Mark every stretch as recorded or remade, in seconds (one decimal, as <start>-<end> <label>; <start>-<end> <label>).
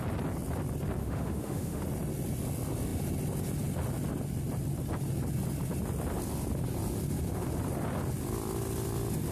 0.0-1.0 recorded; 1.0-1.8 remade; 1.8-9.3 recorded